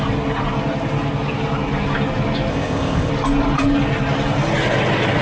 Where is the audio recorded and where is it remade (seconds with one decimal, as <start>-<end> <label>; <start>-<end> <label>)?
0.0-2.5 recorded; 2.5-3.1 remade; 3.1-5.2 recorded